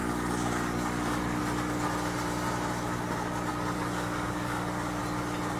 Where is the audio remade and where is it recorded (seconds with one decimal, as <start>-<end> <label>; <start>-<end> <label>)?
0.0-1.4 remade; 1.4-3.5 recorded; 3.5-5.0 remade; 5.0-5.6 recorded